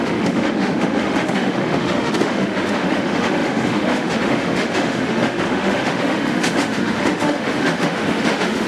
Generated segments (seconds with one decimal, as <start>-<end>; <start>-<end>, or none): 0.0-8.7